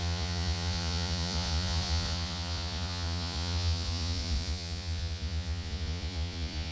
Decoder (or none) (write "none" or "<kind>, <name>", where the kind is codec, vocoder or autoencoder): vocoder, Vocos